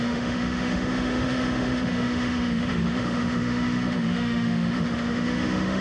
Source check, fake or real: fake